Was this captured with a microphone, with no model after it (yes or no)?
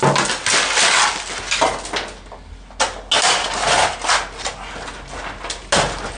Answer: yes